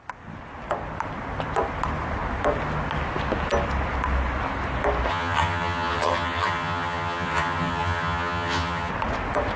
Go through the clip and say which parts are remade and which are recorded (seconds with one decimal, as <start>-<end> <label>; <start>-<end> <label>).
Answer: 0.0-5.1 recorded; 5.1-8.9 remade; 8.9-9.6 recorded